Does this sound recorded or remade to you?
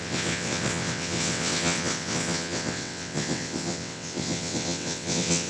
remade